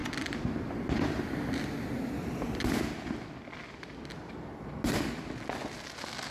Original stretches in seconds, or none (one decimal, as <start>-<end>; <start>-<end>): 0.0-6.3